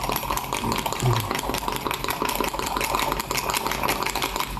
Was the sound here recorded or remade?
recorded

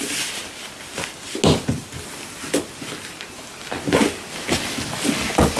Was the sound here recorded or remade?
recorded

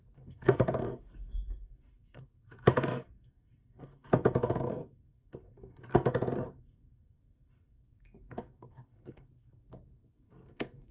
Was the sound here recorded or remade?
remade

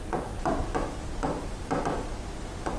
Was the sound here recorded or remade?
recorded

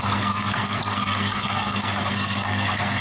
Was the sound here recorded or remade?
remade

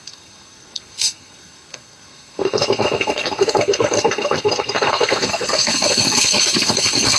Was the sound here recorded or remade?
remade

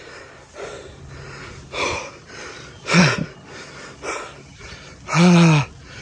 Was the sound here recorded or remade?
recorded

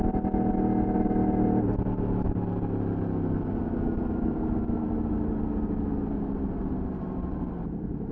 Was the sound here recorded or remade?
recorded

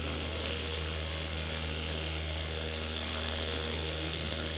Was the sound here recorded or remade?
remade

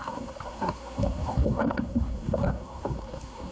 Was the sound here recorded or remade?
remade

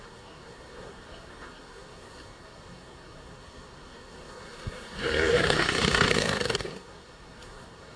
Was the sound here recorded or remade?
remade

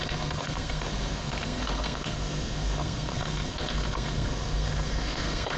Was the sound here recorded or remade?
remade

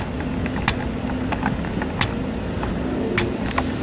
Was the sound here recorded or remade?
recorded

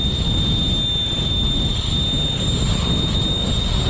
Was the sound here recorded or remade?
recorded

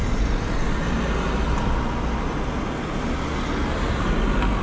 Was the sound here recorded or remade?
recorded